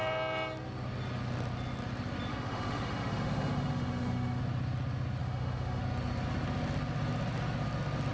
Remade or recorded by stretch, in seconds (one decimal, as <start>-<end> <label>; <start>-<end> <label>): 0.0-2.3 recorded; 2.3-4.4 remade; 4.4-5.2 recorded; 5.2-5.8 remade; 5.8-8.1 recorded